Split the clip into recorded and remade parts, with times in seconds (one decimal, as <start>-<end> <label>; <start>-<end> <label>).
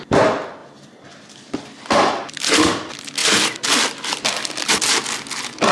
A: 0.0-0.6 recorded; 0.6-2.4 remade; 2.4-5.7 recorded